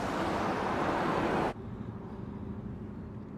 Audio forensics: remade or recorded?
recorded